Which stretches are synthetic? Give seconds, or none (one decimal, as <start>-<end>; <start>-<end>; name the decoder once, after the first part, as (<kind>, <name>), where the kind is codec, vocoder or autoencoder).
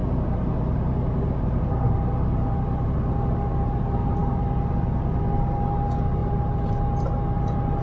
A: 0.0-4.7 (vocoder, BigVGAN v2); 6.2-6.7